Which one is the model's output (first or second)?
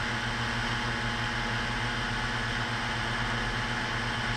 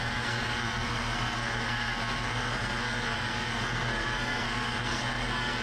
second